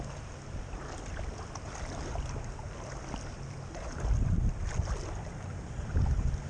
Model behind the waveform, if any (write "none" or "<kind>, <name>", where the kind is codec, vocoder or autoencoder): none